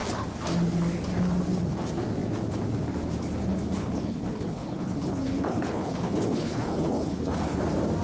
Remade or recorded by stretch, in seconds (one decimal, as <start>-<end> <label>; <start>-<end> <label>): 0.0-3.8 recorded; 3.8-7.6 remade; 7.6-8.0 recorded